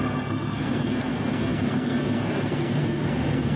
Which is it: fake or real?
fake